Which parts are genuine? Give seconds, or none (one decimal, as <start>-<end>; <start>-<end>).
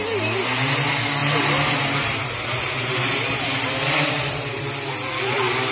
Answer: 0.0-1.2; 4.6-5.7